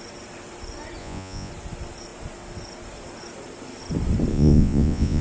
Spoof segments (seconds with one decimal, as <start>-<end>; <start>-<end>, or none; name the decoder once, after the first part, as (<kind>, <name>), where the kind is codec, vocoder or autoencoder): 1.0-1.5 (vocoder, Vocos); 4.3-5.2

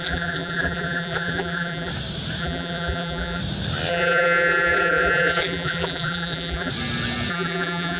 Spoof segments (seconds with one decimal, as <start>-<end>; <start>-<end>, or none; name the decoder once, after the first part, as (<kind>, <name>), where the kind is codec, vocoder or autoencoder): 0.0-1.9 (vocoder, BigVGAN v2); 2.4-3.4; 3.9-6.7; 7.3-8.0